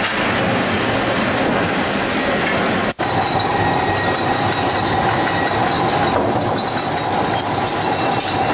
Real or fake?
real